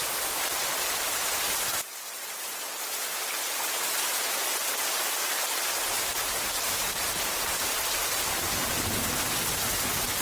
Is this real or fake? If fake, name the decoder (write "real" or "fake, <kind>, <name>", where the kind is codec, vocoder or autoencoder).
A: fake, vocoder, BigVGAN v2